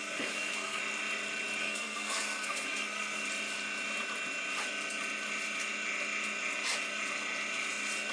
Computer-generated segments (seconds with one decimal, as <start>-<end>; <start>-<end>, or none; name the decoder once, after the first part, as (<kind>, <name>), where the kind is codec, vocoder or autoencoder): 0.0-0.8 (codec, SNAC); 1.6-3.2